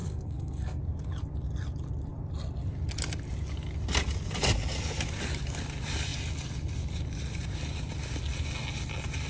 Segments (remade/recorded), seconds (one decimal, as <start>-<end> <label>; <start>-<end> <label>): 0.0-0.8 remade; 0.8-9.3 recorded